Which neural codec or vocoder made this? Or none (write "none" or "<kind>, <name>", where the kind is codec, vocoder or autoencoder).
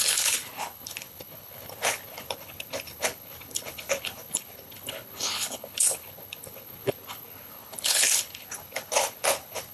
codec, HILCodec